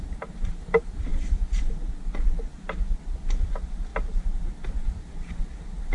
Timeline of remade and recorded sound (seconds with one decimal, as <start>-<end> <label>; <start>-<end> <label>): 0.0-1.1 recorded; 1.1-1.8 remade; 1.8-2.5 recorded; 2.5-3.0 remade; 3.0-3.9 recorded; 3.9-5.4 remade; 5.4-5.9 recorded